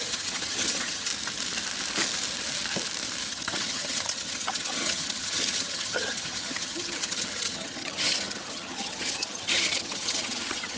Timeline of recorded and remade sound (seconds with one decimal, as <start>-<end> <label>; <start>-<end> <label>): 0.0-1.1 remade; 1.1-3.3 recorded; 3.3-10.8 remade